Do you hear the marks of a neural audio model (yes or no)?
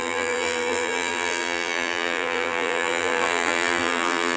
yes